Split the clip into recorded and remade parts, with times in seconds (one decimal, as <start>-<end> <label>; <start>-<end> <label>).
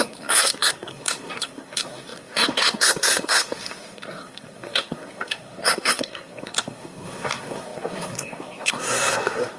0.0-9.6 remade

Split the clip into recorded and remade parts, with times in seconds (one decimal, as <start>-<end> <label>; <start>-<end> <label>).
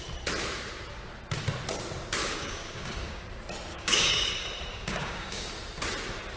0.0-2.2 recorded; 2.2-3.3 remade; 3.3-3.7 recorded; 3.7-4.3 remade; 4.3-4.7 recorded; 4.7-5.5 remade; 5.5-6.4 recorded